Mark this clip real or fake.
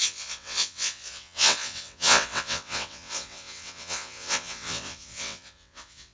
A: fake